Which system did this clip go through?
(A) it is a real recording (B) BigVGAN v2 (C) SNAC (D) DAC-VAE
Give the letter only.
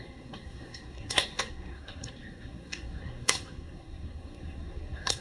C